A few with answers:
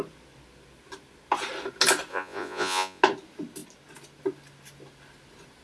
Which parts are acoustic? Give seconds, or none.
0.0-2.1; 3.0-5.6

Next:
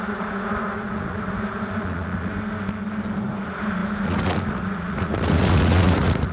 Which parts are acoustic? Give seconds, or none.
2.3-3.3